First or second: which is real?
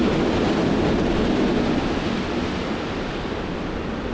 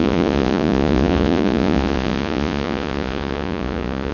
first